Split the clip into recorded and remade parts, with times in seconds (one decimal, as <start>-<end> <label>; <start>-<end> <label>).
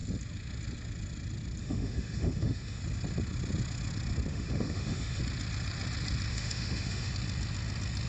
0.0-1.6 recorded; 1.6-2.8 remade; 2.8-4.3 recorded; 4.3-5.2 remade; 5.2-6.3 recorded; 6.3-7.1 remade; 7.1-8.1 recorded